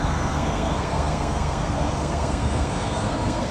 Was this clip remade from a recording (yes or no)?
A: yes